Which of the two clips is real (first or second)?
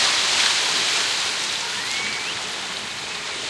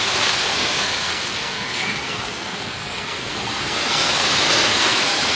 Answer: first